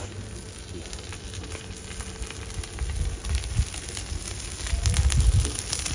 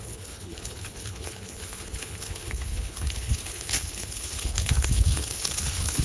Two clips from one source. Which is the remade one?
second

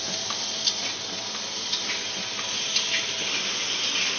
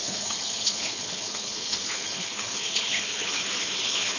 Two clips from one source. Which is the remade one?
second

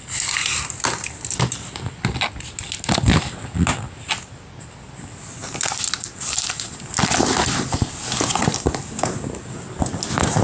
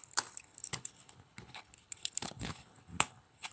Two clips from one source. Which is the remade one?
second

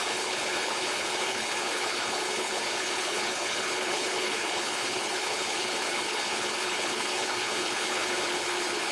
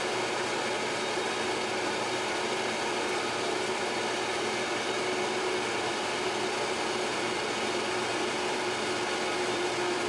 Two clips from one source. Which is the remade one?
first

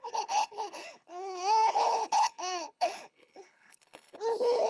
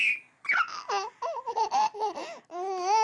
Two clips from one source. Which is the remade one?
first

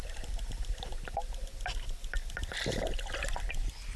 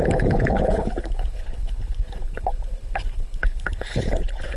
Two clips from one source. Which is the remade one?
second